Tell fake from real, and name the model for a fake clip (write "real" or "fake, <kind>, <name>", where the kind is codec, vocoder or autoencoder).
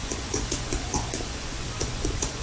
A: fake, vocoder, Vocos